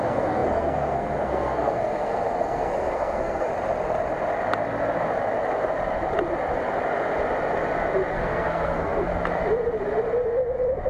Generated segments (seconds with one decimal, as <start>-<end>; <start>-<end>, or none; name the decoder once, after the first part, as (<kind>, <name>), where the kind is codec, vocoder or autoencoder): 0.0-3.5 (codec, SNAC); 8.1-9.1